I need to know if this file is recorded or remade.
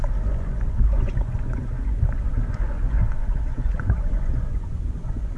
remade